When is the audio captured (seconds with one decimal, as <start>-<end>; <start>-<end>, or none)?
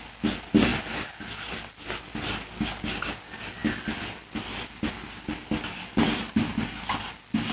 0.0-7.5